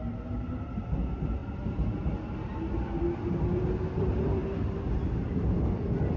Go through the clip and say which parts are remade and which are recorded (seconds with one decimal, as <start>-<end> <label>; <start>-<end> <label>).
0.0-6.2 recorded